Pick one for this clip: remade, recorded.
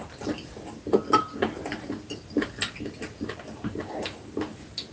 recorded